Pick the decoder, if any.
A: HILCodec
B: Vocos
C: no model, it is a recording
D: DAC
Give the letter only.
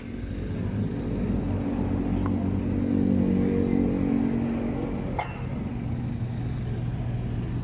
C